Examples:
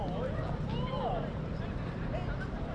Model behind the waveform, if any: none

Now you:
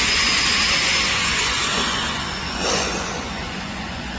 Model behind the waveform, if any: vocoder, Vocos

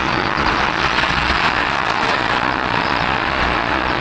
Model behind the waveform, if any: vocoder, Vocos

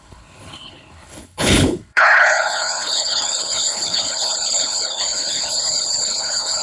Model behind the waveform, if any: codec, HILCodec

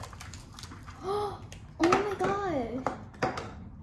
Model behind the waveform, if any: none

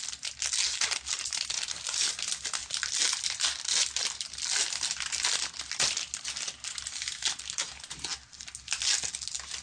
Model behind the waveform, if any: none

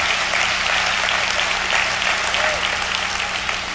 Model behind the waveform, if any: none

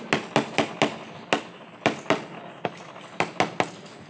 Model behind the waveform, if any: none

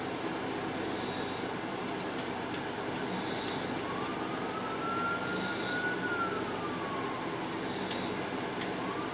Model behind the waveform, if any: none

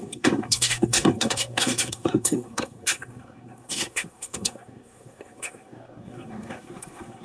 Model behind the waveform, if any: codec, SNAC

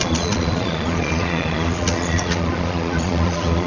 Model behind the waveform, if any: vocoder, Vocos